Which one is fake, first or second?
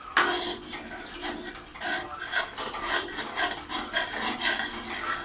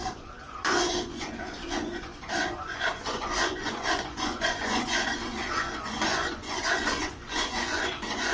second